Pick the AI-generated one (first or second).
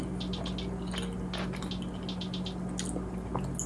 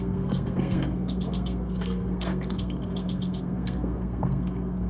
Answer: second